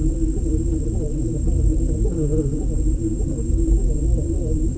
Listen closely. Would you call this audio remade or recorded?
remade